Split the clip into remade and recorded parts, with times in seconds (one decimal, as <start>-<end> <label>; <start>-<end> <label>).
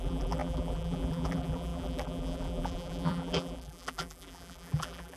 0.0-5.2 remade